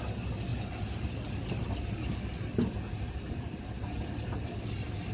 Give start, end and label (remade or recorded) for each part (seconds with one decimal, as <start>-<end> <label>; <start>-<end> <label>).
0.0-5.1 recorded